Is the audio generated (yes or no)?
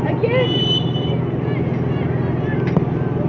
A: no